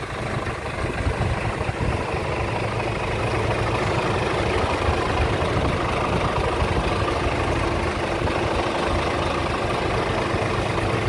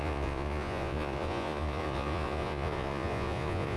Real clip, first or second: first